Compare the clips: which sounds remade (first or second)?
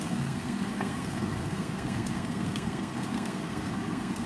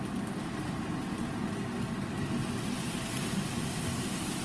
first